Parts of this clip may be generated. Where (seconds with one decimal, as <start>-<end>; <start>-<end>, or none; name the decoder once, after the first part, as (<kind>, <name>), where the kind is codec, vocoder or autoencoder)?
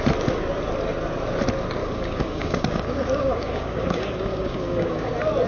1.8-5.1 (codec, DAC)